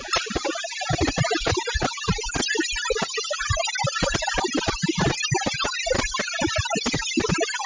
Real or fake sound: real